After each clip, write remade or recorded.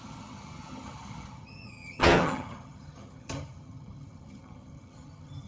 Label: remade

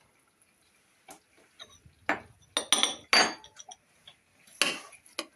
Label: recorded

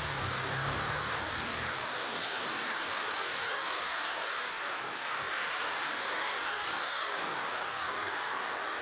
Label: remade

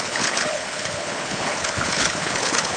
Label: remade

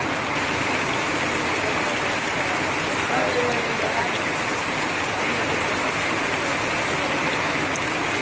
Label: recorded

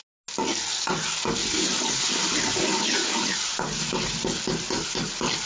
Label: recorded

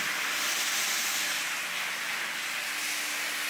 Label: recorded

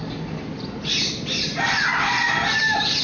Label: recorded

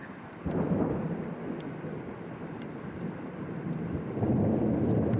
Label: recorded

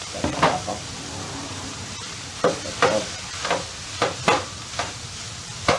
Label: remade